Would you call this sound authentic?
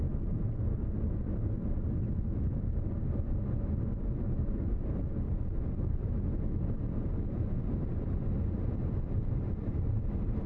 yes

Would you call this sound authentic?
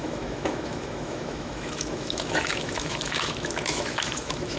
no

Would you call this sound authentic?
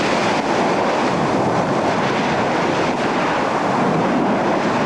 no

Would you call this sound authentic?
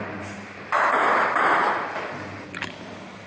yes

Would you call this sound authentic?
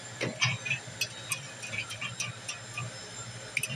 yes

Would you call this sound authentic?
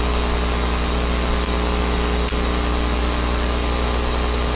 yes